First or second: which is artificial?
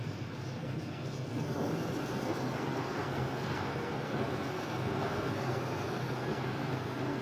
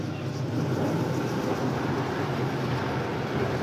first